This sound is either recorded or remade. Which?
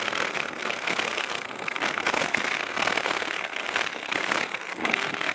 remade